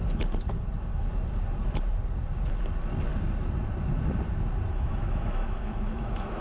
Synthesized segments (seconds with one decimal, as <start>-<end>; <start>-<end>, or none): 4.7-6.4

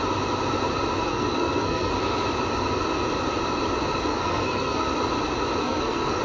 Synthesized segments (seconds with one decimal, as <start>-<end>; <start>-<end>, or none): 1.1-1.9; 4.1-4.9; 5.6-6.2

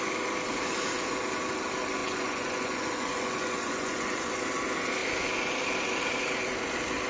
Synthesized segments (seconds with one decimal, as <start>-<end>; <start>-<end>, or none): 2.0-4.3

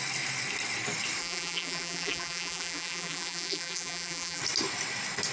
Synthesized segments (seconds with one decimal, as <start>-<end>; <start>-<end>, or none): 1.2-4.4

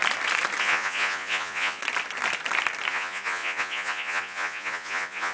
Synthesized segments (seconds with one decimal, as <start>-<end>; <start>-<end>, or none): 0.6-1.8; 2.9-5.3

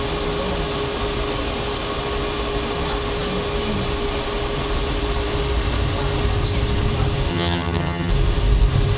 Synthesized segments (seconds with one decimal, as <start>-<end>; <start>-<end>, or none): 7.3-8.1